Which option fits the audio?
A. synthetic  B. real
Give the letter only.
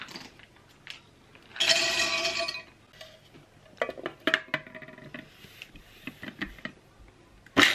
B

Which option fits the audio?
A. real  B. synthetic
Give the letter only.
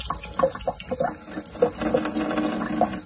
A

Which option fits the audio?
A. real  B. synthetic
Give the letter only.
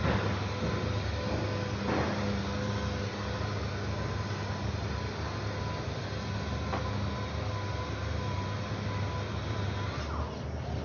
A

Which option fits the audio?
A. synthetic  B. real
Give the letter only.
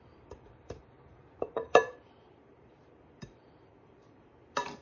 A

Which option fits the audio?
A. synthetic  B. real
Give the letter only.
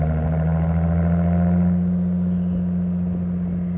B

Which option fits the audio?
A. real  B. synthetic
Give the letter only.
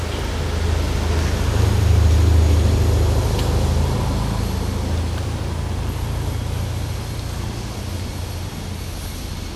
A